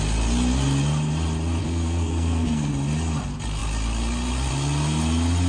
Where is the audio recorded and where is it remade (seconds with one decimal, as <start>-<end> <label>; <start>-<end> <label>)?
0.0-1.6 recorded; 1.6-2.7 remade; 2.7-5.5 recorded